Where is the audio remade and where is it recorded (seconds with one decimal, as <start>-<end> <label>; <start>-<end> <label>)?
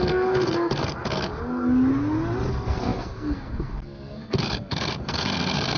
0.0-1.3 remade; 1.3-2.5 recorded; 2.5-5.8 remade